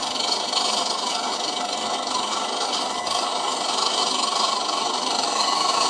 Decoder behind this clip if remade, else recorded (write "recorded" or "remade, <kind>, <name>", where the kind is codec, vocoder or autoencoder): remade, autoencoder, DAC-VAE